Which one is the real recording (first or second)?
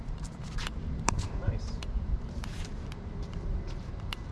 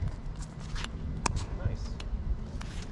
second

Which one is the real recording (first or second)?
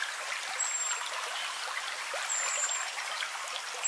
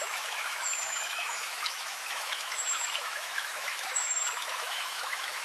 first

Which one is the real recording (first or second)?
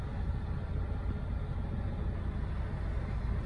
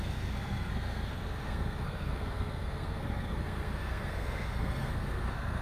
first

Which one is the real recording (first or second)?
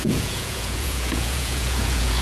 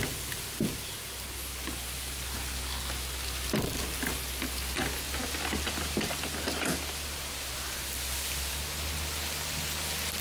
second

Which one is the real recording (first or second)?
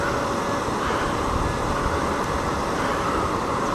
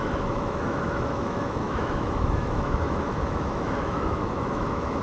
first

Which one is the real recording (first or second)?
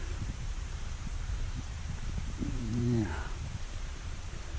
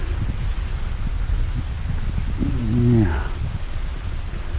second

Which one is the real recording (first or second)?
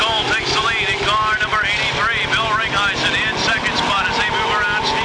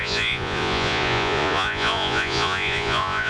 first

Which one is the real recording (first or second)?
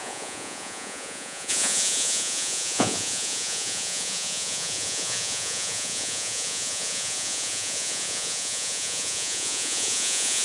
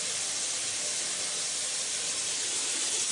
second